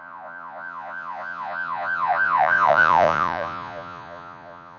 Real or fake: fake